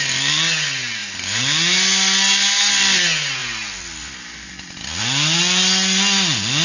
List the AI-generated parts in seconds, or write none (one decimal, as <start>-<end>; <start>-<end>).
none